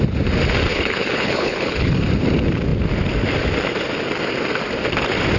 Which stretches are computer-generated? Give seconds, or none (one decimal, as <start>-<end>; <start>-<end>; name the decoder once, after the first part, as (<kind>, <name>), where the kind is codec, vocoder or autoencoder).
0.7-1.9 (codec, HILCodec)